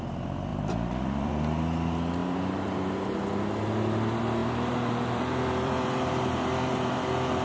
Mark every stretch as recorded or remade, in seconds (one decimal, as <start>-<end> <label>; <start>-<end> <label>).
0.0-0.5 recorded; 0.5-1.3 remade; 1.3-2.2 recorded; 2.2-3.3 remade; 3.3-4.4 recorded; 4.4-6.9 remade; 6.9-7.4 recorded